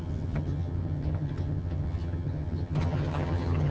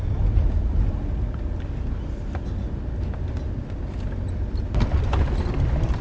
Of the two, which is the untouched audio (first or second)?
second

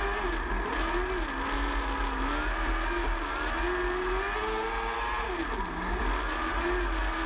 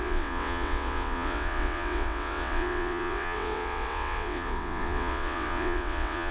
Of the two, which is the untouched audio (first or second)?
first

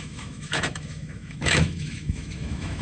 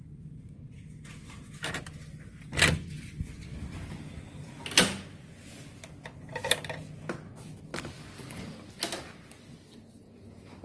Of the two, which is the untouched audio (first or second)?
second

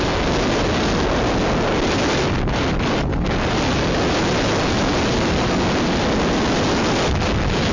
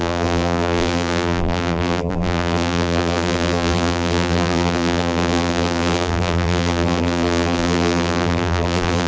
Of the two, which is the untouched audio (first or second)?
first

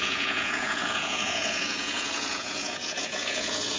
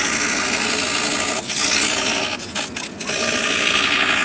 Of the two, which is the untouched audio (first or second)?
second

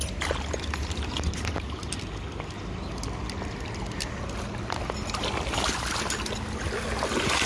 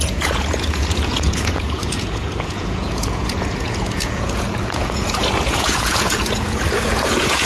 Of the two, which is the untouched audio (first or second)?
first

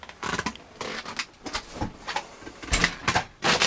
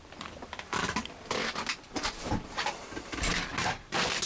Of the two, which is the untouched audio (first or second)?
first